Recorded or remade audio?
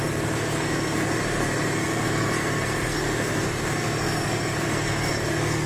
remade